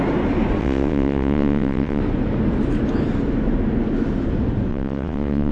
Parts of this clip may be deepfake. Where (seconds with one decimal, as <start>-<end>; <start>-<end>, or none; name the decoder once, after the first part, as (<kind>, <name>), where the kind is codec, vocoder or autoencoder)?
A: 0.6-2.0 (vocoder, WaveNeXt); 4.7-5.5